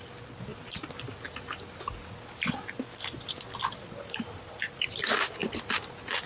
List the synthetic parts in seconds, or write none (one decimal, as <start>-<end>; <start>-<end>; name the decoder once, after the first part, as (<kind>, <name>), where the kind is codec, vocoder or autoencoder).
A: none